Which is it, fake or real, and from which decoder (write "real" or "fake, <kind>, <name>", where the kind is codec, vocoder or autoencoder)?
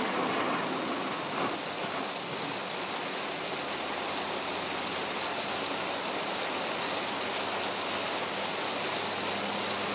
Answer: real